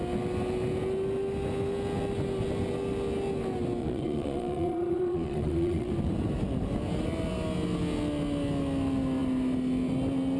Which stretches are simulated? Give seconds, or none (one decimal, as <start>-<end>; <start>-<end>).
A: 3.8-5.9